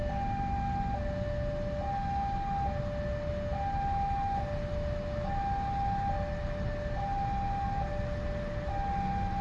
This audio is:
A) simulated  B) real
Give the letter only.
B